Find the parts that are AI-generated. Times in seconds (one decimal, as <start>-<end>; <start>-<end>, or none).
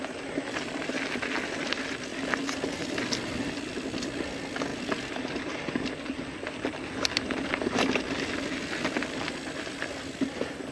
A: none